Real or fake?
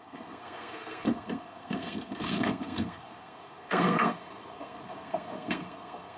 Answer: fake